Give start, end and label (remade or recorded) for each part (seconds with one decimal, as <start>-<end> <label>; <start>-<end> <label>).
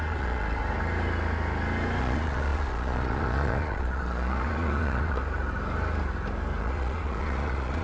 0.0-0.6 remade; 0.6-2.0 recorded; 2.0-5.2 remade; 5.2-6.6 recorded; 6.6-7.8 remade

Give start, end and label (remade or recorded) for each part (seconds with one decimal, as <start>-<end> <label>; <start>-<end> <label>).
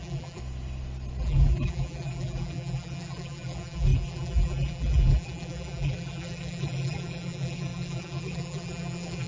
0.0-0.4 remade; 0.4-1.2 recorded; 1.2-9.3 remade